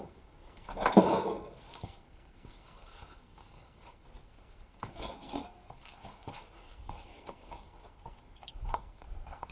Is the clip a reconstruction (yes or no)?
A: yes